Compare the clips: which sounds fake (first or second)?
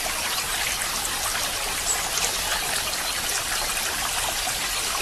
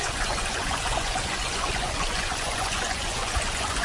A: second